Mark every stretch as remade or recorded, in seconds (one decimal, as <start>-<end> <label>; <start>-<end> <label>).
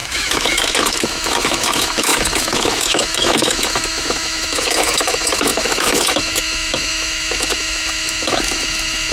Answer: 0.0-9.1 remade